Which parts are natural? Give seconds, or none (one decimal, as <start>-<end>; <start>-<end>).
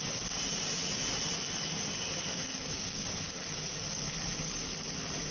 0.0-2.5; 3.1-5.3